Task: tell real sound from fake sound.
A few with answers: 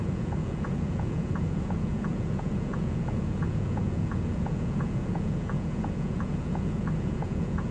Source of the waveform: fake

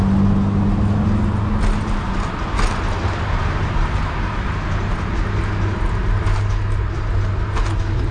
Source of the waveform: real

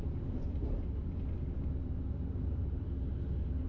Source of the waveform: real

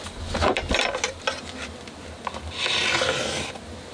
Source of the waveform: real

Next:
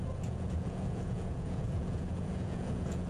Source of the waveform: fake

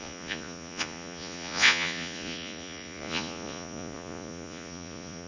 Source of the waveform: fake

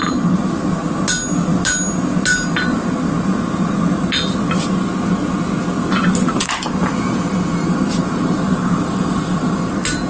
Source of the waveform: real